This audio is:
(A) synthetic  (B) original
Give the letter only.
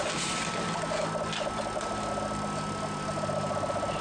B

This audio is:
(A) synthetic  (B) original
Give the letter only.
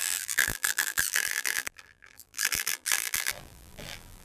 A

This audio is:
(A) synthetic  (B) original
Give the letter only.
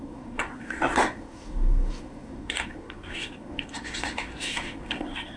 A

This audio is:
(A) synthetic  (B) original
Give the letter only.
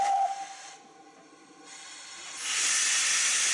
B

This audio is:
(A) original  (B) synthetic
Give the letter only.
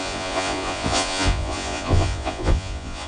B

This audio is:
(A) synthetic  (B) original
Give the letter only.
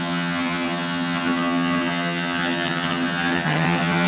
A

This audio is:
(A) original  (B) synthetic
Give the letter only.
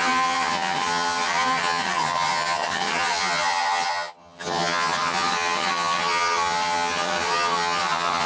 B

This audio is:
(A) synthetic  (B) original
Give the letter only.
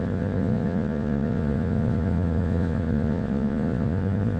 A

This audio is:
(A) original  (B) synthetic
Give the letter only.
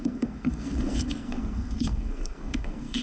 B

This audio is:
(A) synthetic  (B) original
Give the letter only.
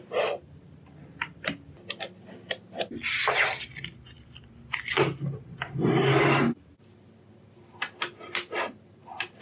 B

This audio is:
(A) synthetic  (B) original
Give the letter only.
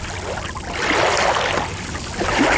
B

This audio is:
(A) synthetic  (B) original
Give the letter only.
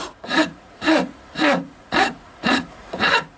A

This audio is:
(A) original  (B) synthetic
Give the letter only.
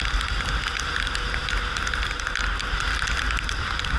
A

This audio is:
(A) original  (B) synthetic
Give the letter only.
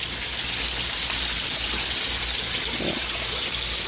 A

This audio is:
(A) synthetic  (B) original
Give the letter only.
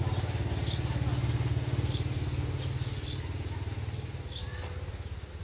B